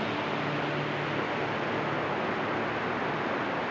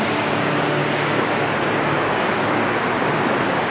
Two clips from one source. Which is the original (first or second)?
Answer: first